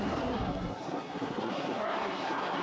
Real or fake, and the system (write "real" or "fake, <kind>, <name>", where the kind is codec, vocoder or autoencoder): fake, codec, SNAC